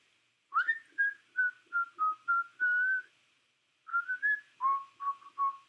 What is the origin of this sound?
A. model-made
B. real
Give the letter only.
B